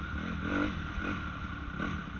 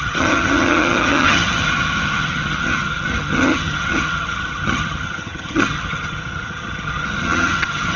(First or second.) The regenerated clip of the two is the second